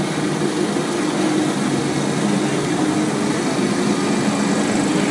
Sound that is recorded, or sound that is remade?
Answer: recorded